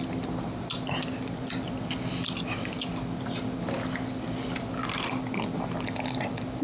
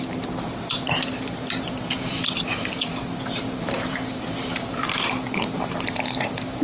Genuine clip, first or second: first